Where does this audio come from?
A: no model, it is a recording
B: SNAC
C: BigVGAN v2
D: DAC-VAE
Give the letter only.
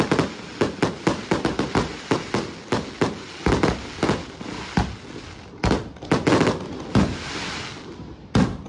A